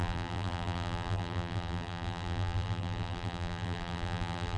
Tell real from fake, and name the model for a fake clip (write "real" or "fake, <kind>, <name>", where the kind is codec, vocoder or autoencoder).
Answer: fake, vocoder, BigVGAN v2